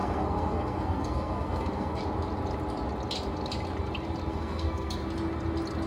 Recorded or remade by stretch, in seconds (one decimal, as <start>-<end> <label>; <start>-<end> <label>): 0.0-2.0 remade; 2.0-4.3 recorded; 4.3-5.0 remade; 5.0-5.9 recorded